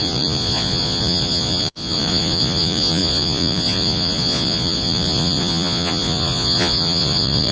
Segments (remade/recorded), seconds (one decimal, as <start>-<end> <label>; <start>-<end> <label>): 0.0-7.5 remade

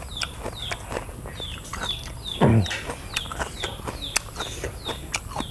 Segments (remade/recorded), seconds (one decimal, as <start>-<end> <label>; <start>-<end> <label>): 0.0-5.5 recorded